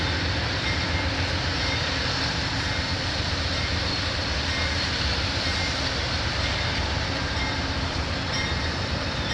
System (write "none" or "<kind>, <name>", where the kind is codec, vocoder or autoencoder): vocoder, BigVGAN v2